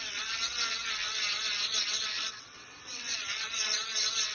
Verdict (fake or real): fake